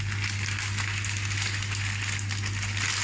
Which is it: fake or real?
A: real